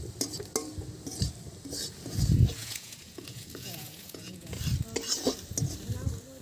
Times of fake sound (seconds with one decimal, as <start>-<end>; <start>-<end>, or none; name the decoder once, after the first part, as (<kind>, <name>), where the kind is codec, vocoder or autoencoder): 2.6-4.6 (vocoder, Vocos)